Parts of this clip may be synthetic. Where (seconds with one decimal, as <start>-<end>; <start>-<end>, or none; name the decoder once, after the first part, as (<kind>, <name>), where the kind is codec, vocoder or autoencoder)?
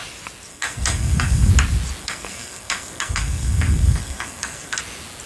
0.5-1.5 (codec, SNAC); 2.0-4.8